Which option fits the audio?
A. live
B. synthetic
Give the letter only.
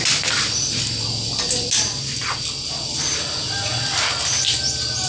A